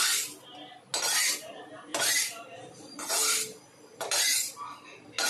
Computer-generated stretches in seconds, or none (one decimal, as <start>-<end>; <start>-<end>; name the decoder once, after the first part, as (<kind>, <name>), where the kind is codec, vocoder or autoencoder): none